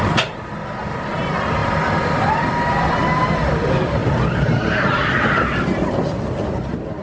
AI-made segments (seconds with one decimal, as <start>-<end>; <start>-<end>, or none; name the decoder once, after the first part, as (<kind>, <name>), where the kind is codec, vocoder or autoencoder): none